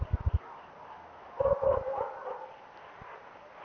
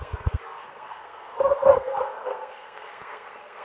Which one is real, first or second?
first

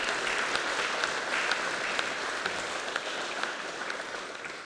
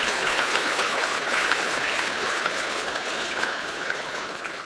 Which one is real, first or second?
first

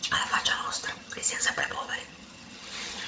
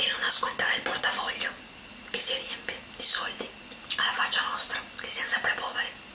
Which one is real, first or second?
second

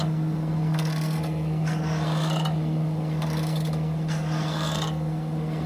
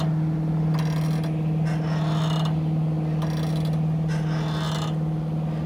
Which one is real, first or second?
second